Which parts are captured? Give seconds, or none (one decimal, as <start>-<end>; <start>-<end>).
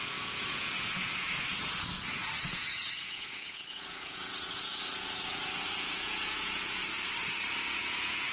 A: 6.8-7.8